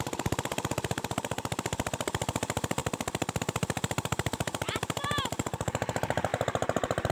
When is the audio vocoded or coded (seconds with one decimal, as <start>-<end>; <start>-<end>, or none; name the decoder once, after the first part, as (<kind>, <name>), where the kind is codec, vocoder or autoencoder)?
0.0-2.8 (vocoder, BigVGAN v2); 3.4-7.1